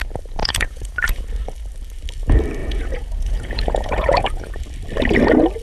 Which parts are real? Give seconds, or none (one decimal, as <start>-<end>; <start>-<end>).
0.0-0.4; 1.2-2.6; 4.5-5.6